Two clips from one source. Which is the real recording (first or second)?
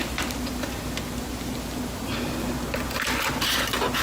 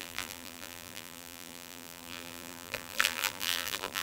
first